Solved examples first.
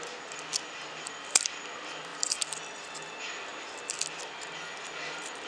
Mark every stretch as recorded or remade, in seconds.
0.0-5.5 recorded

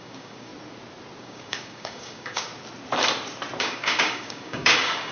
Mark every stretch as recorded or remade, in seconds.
0.0-0.5 remade; 0.5-1.2 recorded; 1.2-2.5 remade; 2.5-3.6 recorded; 3.6-5.1 remade

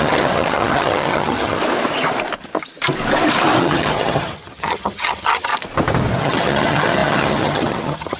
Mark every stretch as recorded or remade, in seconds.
0.0-1.6 remade; 1.6-3.6 recorded; 3.6-5.5 remade; 5.5-6.2 recorded; 6.2-8.2 remade